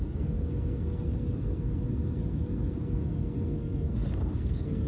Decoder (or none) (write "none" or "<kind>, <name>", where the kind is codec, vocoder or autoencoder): codec, SNAC